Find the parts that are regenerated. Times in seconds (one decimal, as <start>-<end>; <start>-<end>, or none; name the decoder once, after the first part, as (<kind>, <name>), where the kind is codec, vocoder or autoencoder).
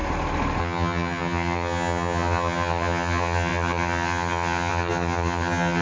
0.6-5.8 (vocoder, HiFi-GAN)